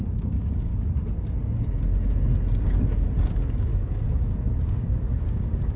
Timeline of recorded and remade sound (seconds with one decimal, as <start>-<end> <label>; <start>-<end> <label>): 0.0-0.7 remade; 0.7-3.3 recorded; 3.3-5.8 remade